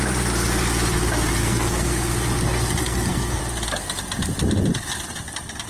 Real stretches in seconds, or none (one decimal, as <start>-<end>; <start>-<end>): 0.0-1.4; 2.1-2.8; 3.4-5.7